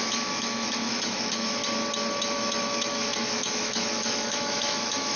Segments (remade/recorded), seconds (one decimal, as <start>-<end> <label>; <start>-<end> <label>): 0.0-1.6 remade; 1.6-2.1 recorded; 2.1-5.2 remade